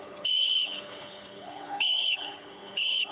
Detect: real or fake fake